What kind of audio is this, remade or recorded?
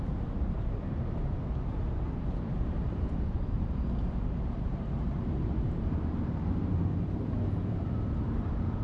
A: remade